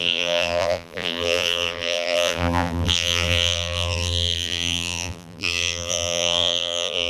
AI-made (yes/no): yes